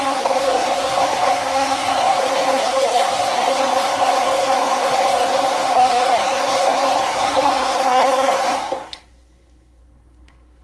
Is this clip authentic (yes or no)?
no